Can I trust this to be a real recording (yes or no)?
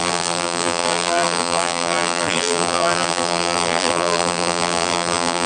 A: no